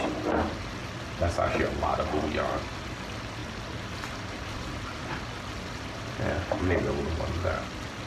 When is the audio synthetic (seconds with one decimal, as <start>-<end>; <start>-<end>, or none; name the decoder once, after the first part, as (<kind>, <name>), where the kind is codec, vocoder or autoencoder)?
none